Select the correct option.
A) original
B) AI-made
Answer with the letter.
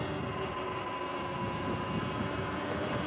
A